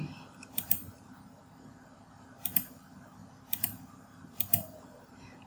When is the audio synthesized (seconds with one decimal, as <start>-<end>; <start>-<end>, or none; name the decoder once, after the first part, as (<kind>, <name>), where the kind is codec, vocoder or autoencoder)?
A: 0.0-5.5 (vocoder, BigVGAN v2)